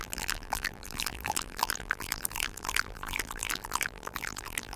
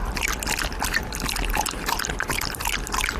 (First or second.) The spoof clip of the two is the first